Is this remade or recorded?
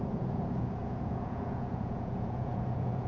remade